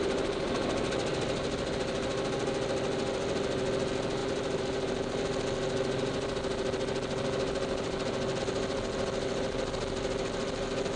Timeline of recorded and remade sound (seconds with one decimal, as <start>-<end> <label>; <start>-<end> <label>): 0.0-11.0 recorded